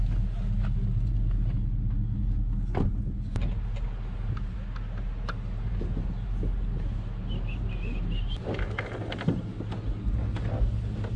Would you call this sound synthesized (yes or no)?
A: no